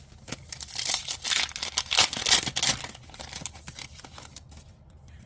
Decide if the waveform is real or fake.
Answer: real